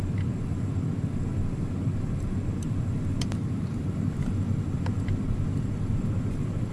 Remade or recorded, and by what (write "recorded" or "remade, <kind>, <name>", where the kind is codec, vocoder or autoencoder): remade, vocoder, BigVGAN v2